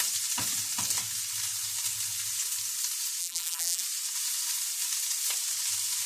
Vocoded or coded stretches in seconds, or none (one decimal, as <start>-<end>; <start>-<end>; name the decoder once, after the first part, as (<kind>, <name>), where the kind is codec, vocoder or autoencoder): 3.2-3.8 (vocoder, BigVGAN v2)